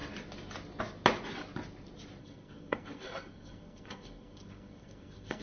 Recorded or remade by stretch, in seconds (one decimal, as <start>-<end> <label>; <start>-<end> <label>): 0.0-2.2 recorded; 2.2-5.4 remade